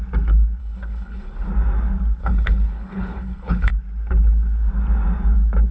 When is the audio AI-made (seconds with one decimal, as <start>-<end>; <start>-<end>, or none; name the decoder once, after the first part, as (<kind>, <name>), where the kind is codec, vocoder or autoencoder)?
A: 0.6-1.5 (codec, HILCodec); 2.2-3.7